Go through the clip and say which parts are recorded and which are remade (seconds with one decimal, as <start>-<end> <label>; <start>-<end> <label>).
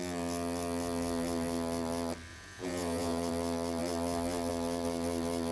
0.0-2.3 recorded; 2.3-3.3 remade; 3.3-5.5 recorded